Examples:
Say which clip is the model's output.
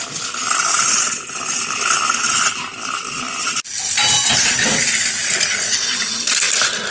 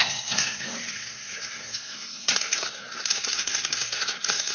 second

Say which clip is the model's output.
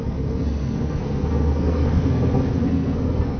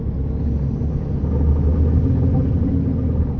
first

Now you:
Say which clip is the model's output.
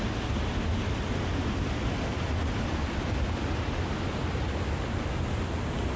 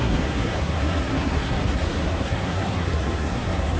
second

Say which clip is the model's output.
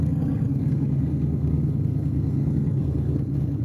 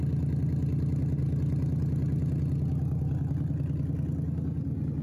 first